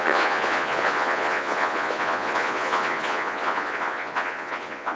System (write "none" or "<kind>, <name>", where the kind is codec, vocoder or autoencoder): vocoder, Vocos